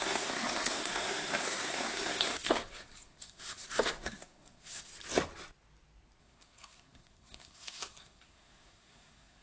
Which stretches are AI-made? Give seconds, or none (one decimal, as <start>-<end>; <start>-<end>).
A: 0.0-4.9; 6.2-9.4